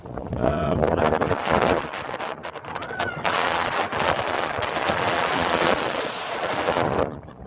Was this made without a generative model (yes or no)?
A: no